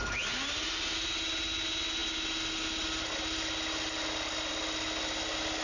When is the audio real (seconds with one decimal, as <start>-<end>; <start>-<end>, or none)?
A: 0.0-5.6